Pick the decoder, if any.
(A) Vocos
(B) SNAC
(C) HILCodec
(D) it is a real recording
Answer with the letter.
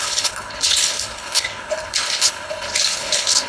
C